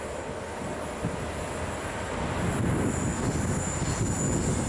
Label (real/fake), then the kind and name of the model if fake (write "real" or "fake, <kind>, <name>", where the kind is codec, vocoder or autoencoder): real